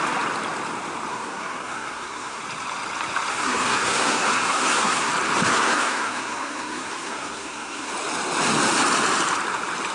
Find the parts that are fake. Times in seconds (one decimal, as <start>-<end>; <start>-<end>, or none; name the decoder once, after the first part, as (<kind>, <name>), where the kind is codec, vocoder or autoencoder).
1.1-2.4 (codec, SNAC); 3.3-5.1; 5.5-7.9